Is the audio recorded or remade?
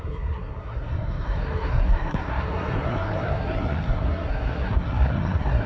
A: remade